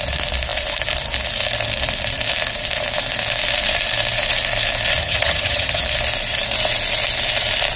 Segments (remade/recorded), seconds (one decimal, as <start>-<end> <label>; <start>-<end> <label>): 0.0-5.0 recorded; 5.0-5.8 remade; 5.8-7.8 recorded